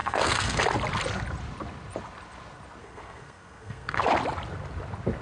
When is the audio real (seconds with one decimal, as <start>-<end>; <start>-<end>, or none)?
0.6-2.8; 4.0-5.2